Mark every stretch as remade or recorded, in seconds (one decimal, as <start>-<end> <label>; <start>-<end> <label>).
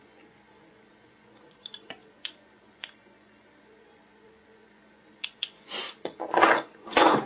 0.0-7.3 remade